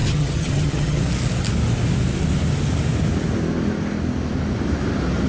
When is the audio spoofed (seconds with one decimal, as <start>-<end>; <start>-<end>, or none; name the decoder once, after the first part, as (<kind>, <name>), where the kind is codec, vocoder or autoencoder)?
0.0-1.0 (vocoder, HiFi-GAN)